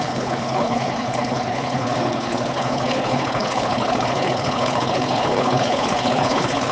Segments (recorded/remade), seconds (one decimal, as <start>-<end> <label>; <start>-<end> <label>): 0.0-6.7 remade